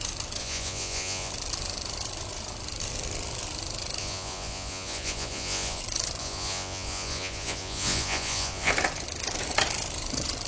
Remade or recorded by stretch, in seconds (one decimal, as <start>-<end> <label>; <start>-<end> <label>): 0.0-0.4 recorded; 0.4-1.3 remade; 1.3-4.0 recorded; 4.0-5.8 remade; 5.8-6.2 recorded; 6.2-8.7 remade; 8.7-10.5 recorded